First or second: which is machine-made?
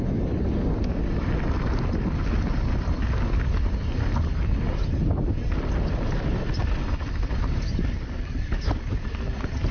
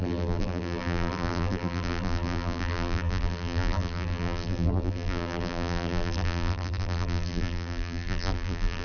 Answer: second